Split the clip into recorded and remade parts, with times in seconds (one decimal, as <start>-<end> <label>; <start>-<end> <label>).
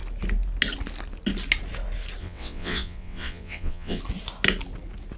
0.0-2.2 recorded; 2.2-4.0 remade; 4.0-5.2 recorded